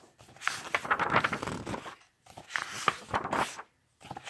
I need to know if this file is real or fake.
real